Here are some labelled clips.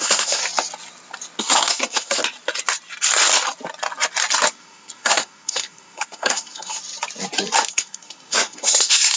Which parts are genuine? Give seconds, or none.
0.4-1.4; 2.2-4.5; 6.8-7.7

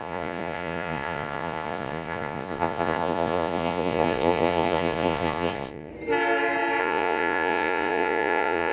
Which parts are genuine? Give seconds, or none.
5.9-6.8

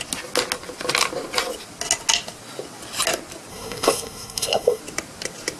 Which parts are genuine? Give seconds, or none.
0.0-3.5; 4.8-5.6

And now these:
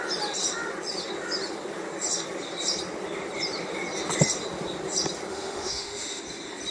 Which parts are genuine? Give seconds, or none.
0.0-5.3; 6.2-6.7

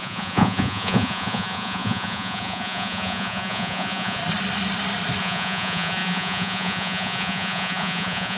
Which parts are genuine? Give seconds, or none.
4.2-5.2

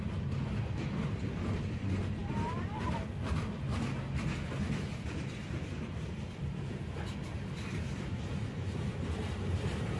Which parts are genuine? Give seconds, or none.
3.7-4.6